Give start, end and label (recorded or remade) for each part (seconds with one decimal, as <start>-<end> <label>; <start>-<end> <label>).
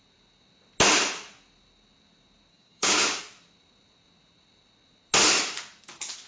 0.0-2.5 recorded; 2.5-3.2 remade; 3.2-6.3 recorded